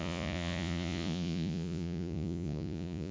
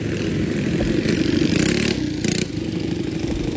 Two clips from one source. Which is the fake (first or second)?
first